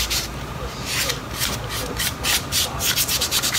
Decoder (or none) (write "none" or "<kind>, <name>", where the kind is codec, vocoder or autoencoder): vocoder, BigVGAN v2